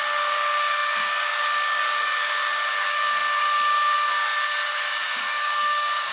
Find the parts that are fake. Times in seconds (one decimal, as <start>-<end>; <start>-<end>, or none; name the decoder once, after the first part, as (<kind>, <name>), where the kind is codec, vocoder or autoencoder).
0.0-6.1 (codec, DAC)